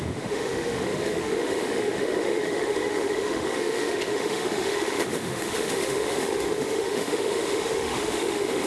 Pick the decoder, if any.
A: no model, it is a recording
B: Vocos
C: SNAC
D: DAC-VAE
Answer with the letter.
D